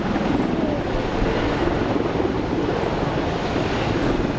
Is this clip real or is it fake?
real